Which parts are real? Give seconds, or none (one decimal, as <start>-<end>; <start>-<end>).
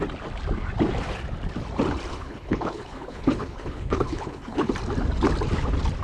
0.0-2.1; 4.7-6.0